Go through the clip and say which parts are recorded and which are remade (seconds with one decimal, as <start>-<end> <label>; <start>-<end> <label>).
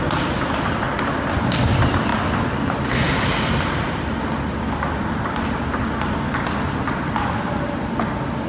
0.0-8.5 recorded